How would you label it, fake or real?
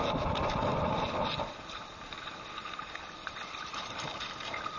real